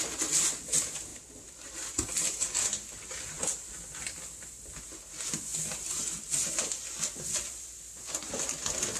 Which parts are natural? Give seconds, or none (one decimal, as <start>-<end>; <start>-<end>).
0.0-9.0